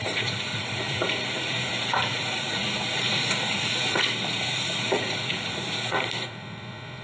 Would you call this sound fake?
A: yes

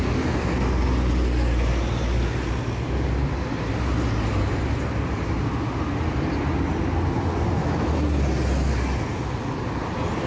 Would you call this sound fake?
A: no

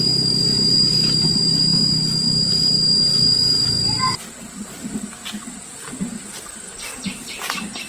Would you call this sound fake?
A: yes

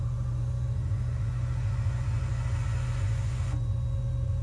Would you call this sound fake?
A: yes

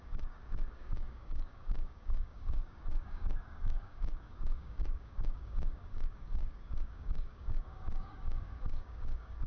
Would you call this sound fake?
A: yes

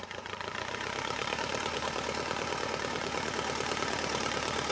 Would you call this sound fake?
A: yes